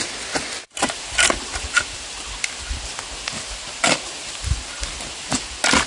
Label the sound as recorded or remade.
recorded